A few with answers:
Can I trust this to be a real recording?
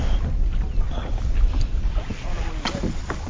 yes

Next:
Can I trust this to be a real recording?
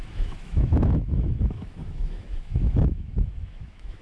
no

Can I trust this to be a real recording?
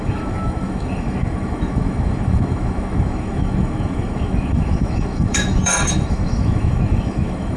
no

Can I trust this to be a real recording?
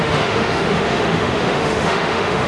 no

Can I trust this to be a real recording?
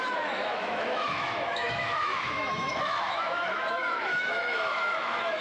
no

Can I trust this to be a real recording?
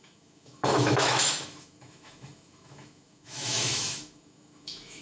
no